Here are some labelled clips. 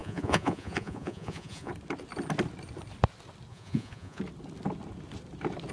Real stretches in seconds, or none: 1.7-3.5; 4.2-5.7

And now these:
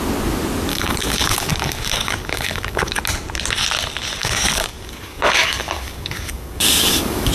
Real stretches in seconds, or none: 0.0-0.7; 3.0-4.2